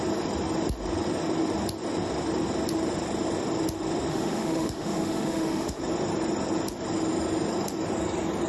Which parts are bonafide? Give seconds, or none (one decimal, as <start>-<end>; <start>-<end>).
0.0-4.1; 5.8-8.5